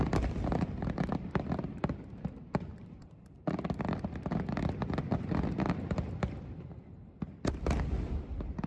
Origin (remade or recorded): remade